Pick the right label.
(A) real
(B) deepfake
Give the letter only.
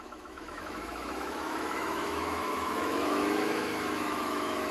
B